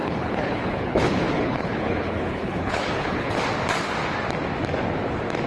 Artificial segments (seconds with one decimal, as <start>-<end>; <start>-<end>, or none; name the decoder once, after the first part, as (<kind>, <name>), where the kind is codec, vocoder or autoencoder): 0.0-3.3 (codec, HILCodec)